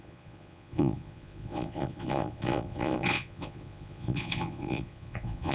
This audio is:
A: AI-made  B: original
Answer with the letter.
A